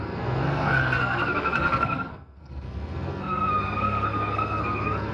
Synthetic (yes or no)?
yes